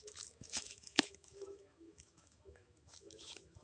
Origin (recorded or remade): remade